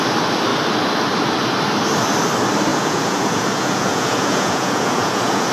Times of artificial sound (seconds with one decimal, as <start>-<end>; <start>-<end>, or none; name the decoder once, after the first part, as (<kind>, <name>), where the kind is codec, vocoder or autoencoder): 2.7-5.5 (vocoder, Vocos)